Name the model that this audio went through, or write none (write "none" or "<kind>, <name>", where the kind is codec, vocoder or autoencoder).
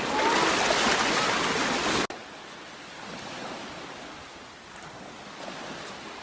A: none